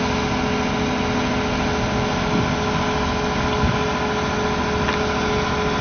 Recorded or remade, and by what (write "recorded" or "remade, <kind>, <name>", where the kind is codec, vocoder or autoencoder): recorded